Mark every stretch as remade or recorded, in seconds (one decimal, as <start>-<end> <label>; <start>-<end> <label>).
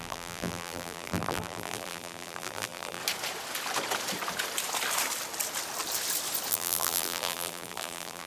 0.0-3.0 remade; 3.0-6.5 recorded; 6.5-8.3 remade